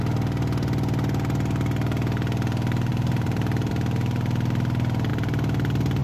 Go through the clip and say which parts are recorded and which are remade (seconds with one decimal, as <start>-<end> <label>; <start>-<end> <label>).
0.0-2.9 recorded; 2.9-3.7 remade; 3.7-5.1 recorded; 5.1-6.0 remade